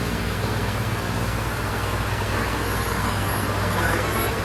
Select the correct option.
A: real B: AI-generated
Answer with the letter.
B